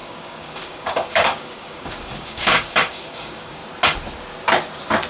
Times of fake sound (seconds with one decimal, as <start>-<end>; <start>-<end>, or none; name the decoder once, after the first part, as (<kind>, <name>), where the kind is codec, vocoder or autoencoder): 0.0-3.6 (codec, DAC)

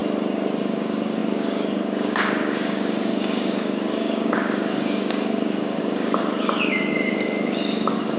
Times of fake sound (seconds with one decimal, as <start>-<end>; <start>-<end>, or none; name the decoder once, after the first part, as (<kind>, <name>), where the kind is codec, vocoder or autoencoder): 0.6-8.2 (codec, DAC)

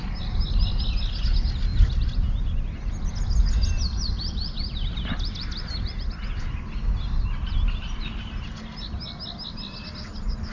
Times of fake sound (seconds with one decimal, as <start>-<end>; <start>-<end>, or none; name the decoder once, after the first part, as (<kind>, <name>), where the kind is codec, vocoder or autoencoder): none

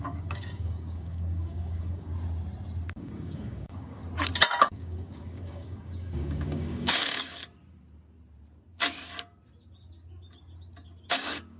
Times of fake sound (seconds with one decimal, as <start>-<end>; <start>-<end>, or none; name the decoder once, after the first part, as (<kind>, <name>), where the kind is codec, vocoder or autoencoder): 0.0-2.1 (codec, DAC); 2.9-4.0; 4.6-7.4; 11.1-11.6

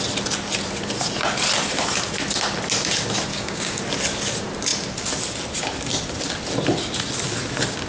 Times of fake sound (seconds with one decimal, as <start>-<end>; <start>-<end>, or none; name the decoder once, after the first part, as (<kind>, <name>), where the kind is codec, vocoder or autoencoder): 3.3-3.8 (codec, DAC)

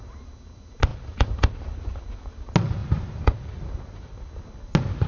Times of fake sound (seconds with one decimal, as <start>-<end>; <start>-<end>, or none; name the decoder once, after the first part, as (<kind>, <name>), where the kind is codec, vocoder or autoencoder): none